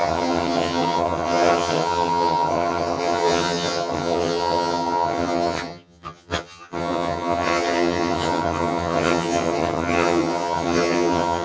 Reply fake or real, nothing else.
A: fake